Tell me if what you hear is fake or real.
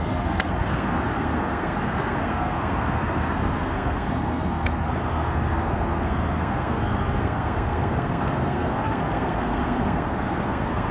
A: fake